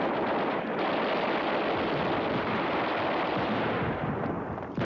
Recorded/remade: recorded